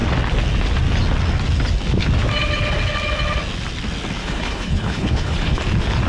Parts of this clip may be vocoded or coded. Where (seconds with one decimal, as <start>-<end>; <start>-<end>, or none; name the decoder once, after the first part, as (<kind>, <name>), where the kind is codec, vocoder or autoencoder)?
4.2-5.6 (codec, HILCodec)